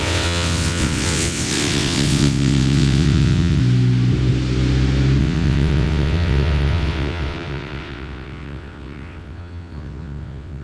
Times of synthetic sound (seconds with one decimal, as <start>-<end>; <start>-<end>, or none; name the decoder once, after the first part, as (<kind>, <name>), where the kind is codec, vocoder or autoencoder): 0.0-3.6 (vocoder, WaveNeXt); 5.2-10.6